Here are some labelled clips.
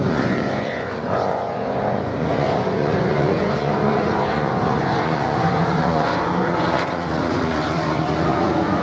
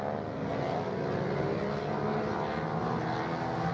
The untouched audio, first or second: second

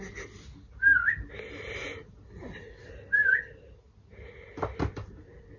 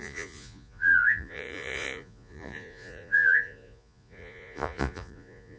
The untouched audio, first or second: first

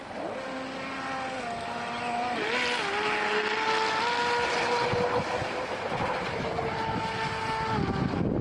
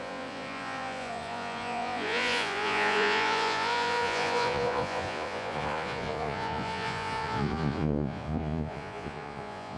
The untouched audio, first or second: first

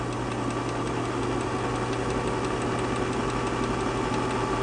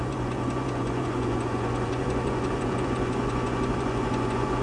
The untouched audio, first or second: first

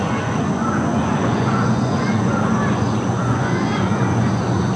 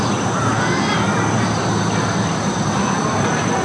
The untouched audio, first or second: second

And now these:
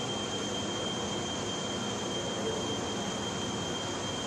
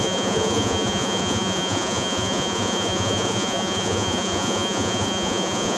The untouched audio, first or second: first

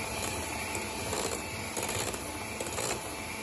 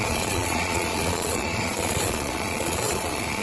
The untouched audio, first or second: first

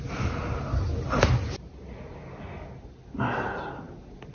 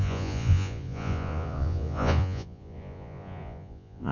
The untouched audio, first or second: first